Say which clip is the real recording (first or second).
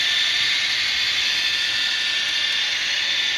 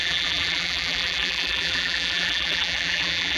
first